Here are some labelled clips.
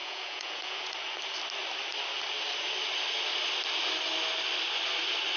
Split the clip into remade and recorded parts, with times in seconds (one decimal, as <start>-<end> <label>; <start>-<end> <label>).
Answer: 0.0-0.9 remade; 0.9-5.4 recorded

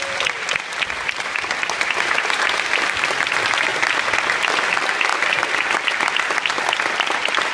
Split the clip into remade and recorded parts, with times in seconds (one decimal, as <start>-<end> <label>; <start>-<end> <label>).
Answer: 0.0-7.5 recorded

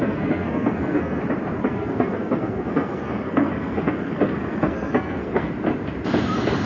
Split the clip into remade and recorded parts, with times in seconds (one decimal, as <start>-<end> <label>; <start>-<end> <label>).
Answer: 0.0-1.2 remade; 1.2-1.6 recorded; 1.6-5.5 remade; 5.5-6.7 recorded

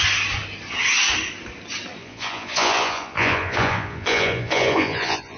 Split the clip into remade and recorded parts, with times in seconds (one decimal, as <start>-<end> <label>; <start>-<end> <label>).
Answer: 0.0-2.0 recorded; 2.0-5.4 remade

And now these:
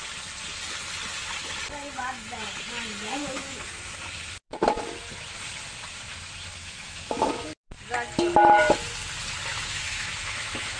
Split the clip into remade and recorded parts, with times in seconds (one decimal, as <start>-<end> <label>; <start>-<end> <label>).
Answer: 0.0-3.2 recorded; 3.2-3.8 remade; 3.8-6.6 recorded; 6.6-7.3 remade; 7.3-9.5 recorded; 9.5-10.8 remade

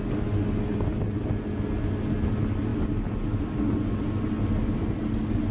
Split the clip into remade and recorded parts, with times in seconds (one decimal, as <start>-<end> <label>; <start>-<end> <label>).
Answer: 0.0-2.7 recorded; 2.7-3.6 remade; 3.6-5.5 recorded

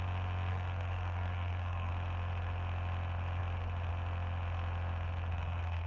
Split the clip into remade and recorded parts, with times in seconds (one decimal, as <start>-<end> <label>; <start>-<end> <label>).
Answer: 0.0-0.5 recorded; 0.5-1.9 remade; 1.9-5.3 recorded; 5.3-5.9 remade

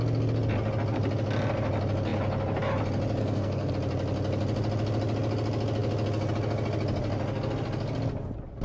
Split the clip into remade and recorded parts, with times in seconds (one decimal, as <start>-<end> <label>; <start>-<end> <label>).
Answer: 0.0-3.2 recorded; 3.2-3.7 remade; 3.7-8.6 recorded